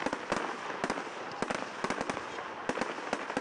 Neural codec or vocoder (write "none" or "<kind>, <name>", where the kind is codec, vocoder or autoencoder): none